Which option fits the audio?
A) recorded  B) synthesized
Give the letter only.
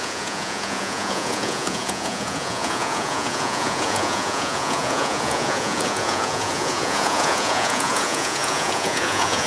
B